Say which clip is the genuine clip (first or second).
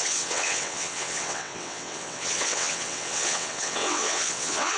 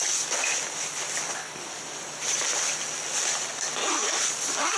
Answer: second